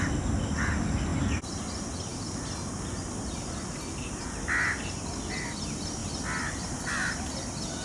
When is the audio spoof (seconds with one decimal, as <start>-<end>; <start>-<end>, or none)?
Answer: none